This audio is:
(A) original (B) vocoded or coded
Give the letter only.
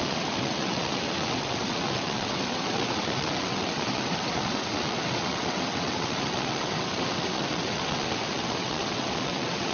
B